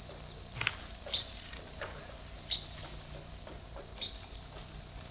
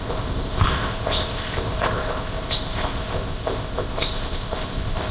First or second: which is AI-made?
second